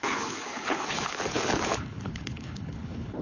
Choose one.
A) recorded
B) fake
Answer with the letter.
B